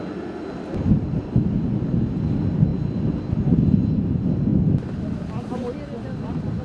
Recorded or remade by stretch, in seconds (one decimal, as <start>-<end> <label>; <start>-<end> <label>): 0.0-6.6 recorded